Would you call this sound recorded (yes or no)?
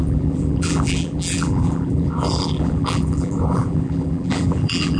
no